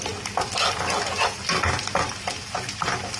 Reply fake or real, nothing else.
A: real